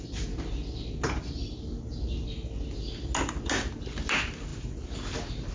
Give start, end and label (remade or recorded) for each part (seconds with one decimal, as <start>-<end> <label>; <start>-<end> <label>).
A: 0.0-5.5 recorded